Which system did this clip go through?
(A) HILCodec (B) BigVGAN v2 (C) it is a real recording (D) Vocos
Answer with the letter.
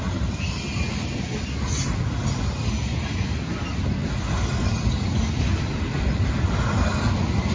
C